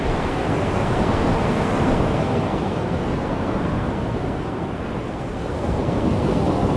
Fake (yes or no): yes